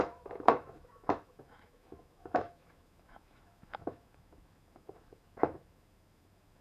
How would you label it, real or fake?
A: fake